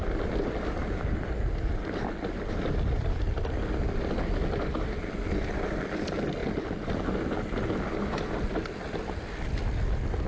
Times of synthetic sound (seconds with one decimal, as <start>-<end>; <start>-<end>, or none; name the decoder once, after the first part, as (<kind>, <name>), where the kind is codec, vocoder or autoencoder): none